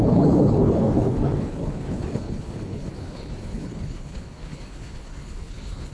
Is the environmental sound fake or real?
fake